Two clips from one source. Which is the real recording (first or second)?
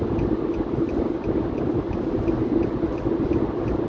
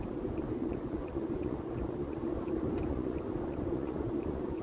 first